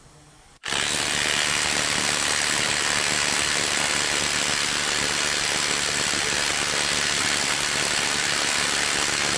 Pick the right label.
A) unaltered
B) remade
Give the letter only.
A